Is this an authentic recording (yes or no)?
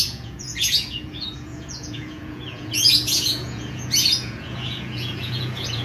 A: no